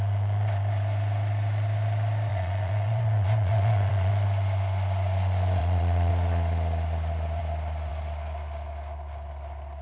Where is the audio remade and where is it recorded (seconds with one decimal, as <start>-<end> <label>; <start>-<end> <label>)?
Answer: 0.0-2.3 recorded; 2.3-4.1 remade; 4.1-5.6 recorded; 5.6-6.1 remade; 6.1-9.8 recorded